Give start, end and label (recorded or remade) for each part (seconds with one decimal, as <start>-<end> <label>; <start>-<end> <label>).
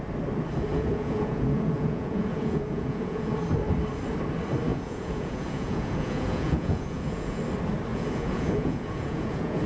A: 0.0-0.7 recorded; 0.7-3.3 remade; 3.3-4.7 recorded; 4.7-7.4 remade; 7.4-7.9 recorded; 7.9-9.7 remade